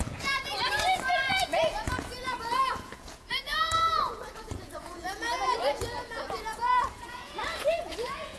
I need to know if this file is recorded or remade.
remade